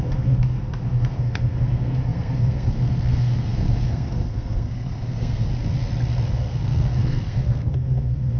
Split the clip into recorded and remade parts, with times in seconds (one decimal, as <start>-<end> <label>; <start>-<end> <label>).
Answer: 0.0-5.5 remade; 5.5-6.3 recorded; 6.3-8.4 remade